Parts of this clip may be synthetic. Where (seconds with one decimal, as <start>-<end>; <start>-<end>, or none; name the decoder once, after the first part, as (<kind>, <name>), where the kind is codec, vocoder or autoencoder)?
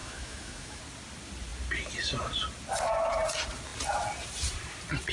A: 0.0-0.8 (autoencoder, DAC-VAE)